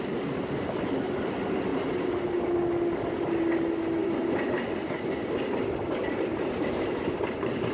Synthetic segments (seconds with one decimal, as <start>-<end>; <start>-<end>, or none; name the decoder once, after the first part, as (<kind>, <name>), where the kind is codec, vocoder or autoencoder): 1.7-2.3 (vocoder, BigVGAN v2); 4.0-4.7; 6.3-6.9